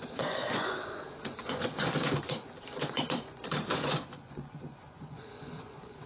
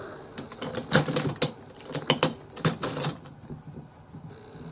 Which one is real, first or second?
second